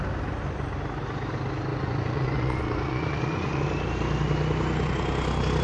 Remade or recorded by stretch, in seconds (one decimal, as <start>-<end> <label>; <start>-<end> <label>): 0.0-1.7 recorded; 1.7-3.6 remade; 3.6-5.6 recorded